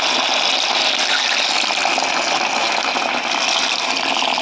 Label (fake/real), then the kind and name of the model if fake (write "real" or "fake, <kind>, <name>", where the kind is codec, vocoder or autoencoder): real